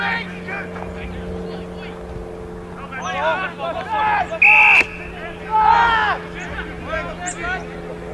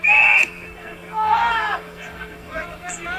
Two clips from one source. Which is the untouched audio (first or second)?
first